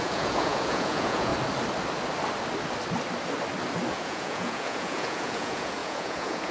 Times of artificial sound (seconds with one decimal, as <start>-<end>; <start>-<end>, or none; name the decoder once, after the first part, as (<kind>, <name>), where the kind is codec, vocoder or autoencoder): 0.0-1.3 (vocoder, Vocos); 3.9-6.5